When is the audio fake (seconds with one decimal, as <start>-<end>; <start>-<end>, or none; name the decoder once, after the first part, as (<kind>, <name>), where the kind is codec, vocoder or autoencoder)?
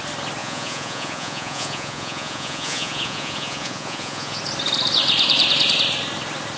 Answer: 0.4-4.4 (vocoder, Vocos)